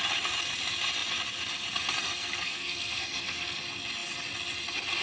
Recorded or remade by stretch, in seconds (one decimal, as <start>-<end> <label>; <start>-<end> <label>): 0.0-2.0 recorded; 2.0-3.6 remade; 3.6-5.0 recorded